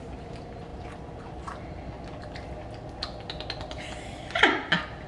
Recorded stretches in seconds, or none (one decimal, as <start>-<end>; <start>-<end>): 0.0-5.1